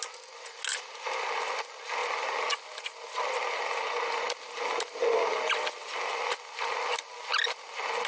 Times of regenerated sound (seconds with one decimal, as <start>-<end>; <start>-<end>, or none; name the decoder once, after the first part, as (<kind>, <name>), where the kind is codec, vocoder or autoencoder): none